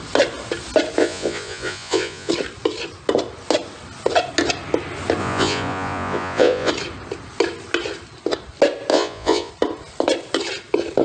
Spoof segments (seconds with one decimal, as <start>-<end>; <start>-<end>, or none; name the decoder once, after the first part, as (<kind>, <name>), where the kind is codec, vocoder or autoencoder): 1.0-2.3 (vocoder, Vocos); 5.2-6.7; 8.9-9.5